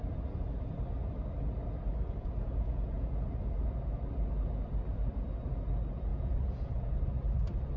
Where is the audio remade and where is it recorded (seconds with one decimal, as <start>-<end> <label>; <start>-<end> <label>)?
0.0-2.2 recorded; 2.2-3.1 remade; 3.1-6.1 recorded; 6.1-7.0 remade; 7.0-7.8 recorded